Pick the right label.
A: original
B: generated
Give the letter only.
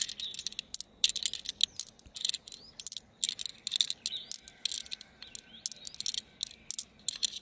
A